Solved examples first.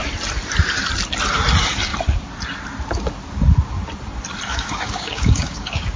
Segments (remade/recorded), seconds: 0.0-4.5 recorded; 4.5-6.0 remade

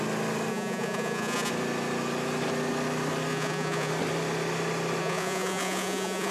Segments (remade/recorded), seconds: 0.0-0.5 recorded; 0.5-1.5 remade; 1.5-3.3 recorded; 3.3-3.9 remade; 3.9-5.0 recorded; 5.0-6.3 remade

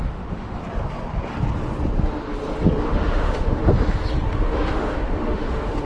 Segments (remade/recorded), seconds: 0.0-0.6 remade; 0.6-2.8 recorded; 2.8-3.6 remade; 3.6-4.3 recorded; 4.3-5.9 remade

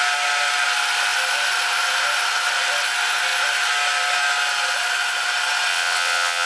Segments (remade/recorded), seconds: 0.0-5.7 recorded; 5.7-6.5 remade

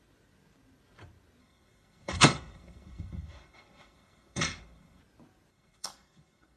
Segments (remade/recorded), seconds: 0.0-1.4 recorded; 1.4-5.0 remade; 5.0-5.5 recorded; 5.5-6.6 remade

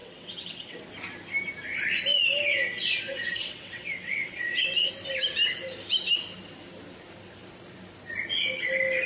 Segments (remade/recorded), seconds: 0.0-0.8 remade; 0.8-2.5 recorded; 2.5-4.9 remade; 4.9-9.1 recorded

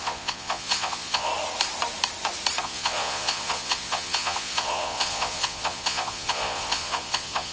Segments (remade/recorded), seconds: 0.0-1.3 remade; 1.3-2.6 recorded; 2.6-7.5 remade